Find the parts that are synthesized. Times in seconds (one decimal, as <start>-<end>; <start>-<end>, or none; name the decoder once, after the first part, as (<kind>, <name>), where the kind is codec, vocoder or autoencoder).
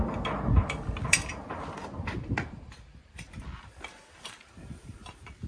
none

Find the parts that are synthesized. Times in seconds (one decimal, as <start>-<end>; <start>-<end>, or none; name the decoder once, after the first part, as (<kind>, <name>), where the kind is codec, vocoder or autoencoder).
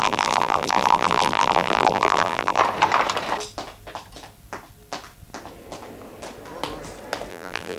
0.0-2.6 (vocoder, BigVGAN v2); 7.3-7.8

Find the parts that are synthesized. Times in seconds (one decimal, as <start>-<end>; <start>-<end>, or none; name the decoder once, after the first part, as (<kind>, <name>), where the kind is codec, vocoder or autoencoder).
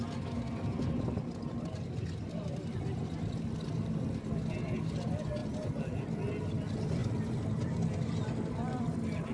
none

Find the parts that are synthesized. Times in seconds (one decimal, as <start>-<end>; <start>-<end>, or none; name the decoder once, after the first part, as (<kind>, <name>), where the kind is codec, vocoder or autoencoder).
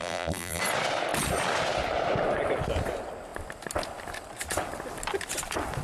0.0-0.6 (vocoder, BigVGAN v2)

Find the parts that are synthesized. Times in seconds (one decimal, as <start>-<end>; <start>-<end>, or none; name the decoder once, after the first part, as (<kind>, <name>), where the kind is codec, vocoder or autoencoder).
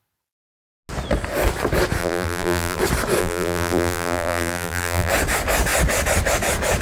2.0-2.8 (vocoder, BigVGAN v2); 3.2-5.1